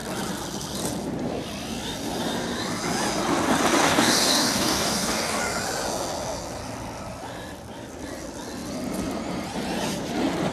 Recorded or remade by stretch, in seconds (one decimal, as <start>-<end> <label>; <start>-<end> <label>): 0.0-3.8 recorded; 3.8-5.4 remade; 5.4-10.5 recorded